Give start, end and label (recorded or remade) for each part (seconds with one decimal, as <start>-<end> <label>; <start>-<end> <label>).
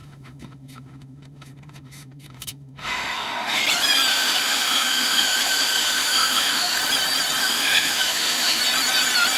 0.0-3.6 remade; 3.6-4.1 recorded; 4.1-6.8 remade; 6.8-7.4 recorded; 7.4-8.6 remade; 8.6-9.4 recorded